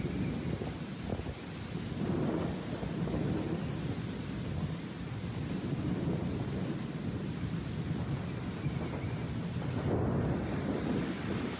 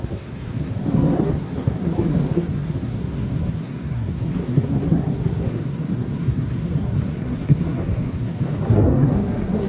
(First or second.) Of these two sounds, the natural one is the first